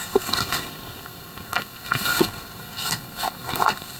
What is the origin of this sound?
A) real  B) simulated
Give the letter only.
B